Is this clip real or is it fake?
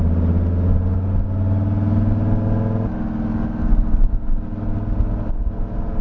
real